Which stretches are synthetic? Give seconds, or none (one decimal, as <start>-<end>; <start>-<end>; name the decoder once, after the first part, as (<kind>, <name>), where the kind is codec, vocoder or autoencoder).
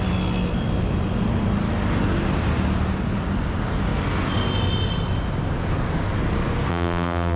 6.7-7.4 (vocoder, BigVGAN v2)